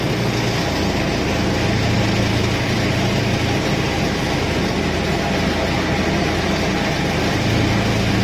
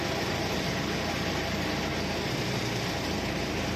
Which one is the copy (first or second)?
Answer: second